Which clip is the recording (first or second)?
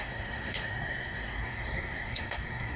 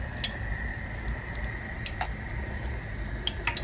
second